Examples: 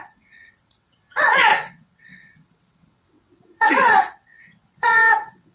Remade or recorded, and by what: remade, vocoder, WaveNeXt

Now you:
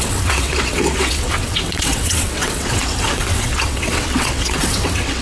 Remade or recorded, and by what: remade, vocoder, WaveNeXt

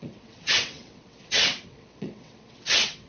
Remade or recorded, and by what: remade, vocoder, WaveNeXt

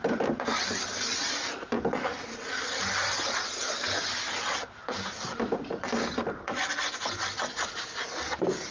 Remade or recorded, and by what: recorded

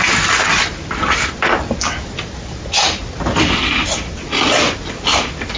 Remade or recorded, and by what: recorded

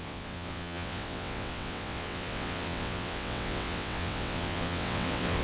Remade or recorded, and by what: remade, vocoder, WaveNeXt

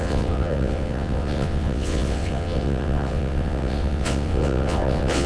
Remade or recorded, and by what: remade, vocoder, WaveNeXt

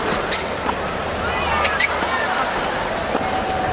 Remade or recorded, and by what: recorded